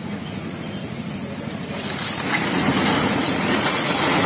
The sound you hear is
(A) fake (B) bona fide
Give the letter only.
A